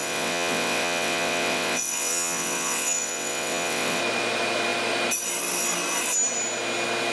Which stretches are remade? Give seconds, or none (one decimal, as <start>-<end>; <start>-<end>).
0.0-4.0